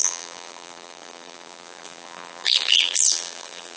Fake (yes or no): yes